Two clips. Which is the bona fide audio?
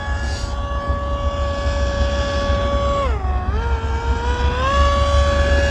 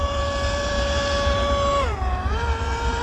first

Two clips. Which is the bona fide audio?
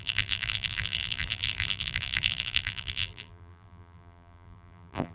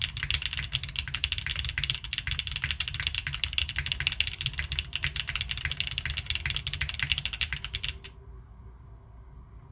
second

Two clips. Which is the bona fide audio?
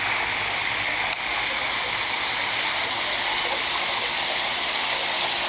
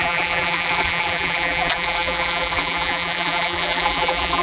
first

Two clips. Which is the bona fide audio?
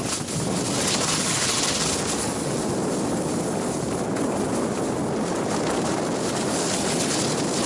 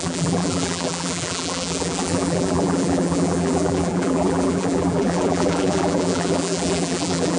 first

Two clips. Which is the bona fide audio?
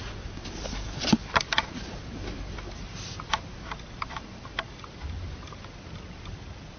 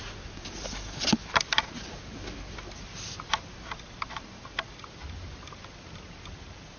second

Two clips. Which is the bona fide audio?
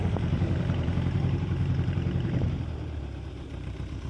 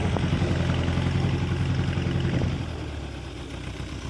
second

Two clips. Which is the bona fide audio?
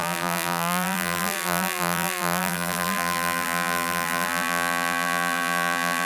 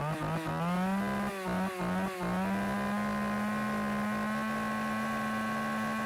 second